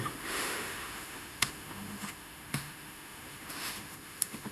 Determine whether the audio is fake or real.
fake